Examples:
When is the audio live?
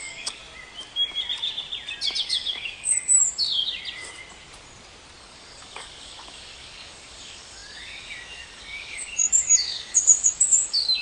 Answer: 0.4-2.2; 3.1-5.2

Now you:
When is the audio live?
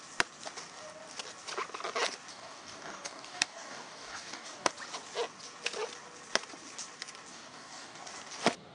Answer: 0.0-2.3; 4.7-7.3; 8.0-8.7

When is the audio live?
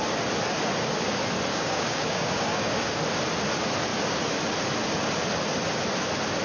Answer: 0.0-1.5; 3.0-6.4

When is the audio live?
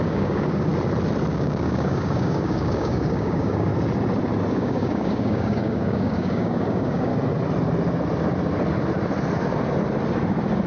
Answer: 0.7-1.3; 3.7-4.5; 7.1-10.7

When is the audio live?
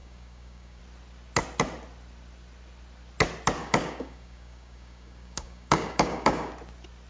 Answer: 0.8-3.6; 6.5-7.1